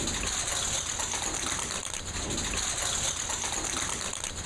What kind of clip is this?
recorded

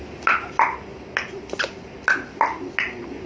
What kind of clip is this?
recorded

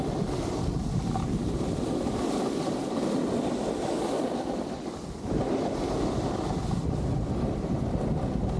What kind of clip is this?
recorded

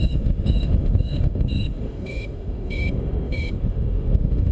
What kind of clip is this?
remade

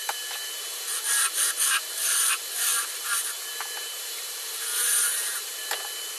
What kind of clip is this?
remade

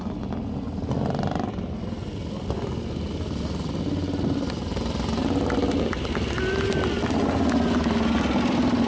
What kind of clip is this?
recorded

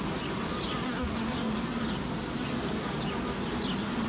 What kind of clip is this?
recorded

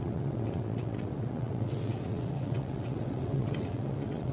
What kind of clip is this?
remade